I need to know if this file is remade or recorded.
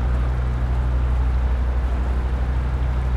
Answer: recorded